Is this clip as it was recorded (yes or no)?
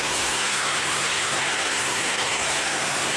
no